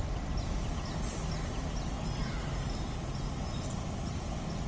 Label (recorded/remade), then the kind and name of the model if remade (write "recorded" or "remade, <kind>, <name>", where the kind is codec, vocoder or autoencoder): recorded